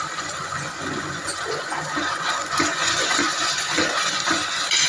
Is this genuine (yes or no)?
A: no